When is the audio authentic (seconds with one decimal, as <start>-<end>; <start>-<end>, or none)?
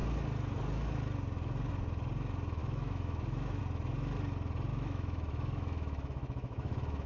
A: 0.0-2.6; 3.6-4.7